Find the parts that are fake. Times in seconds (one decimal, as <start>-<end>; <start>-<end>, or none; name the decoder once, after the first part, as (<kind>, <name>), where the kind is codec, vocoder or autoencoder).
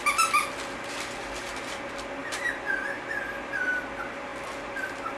none